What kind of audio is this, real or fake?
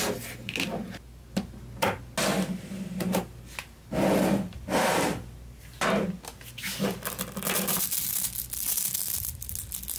real